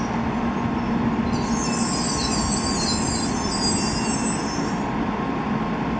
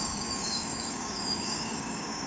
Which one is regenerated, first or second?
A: second